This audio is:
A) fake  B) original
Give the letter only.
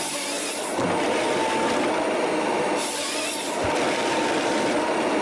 B